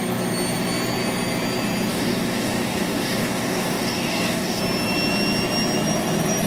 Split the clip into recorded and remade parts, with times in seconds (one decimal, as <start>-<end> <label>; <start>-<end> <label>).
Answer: 0.0-1.9 recorded; 1.9-4.6 remade; 4.6-6.5 recorded